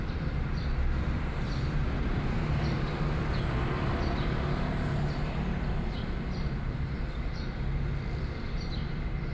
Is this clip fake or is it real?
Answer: fake